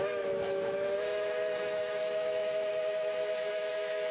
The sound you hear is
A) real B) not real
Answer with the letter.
B